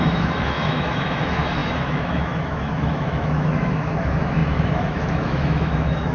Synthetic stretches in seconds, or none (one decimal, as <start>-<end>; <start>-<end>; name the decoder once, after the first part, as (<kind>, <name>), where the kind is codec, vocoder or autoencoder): 0.0-6.1 (autoencoder, DAC-VAE)